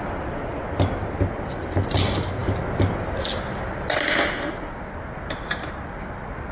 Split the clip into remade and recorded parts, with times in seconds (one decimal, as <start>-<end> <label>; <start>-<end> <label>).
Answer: 0.0-6.5 recorded